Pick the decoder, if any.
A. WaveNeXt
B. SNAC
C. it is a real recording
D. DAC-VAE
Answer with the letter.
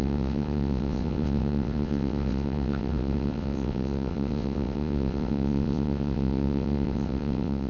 A